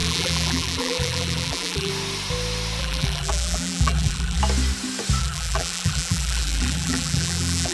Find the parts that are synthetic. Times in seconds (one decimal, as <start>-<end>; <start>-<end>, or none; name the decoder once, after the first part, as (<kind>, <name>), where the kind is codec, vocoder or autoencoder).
0.0-1.9 (vocoder, BigVGAN v2); 2.8-4.4; 5.2-7.7